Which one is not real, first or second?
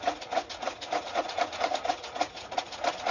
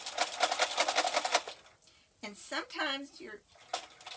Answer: first